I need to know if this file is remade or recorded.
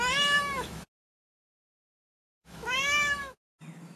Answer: remade